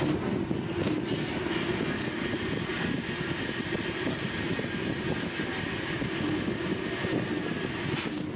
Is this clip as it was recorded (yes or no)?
yes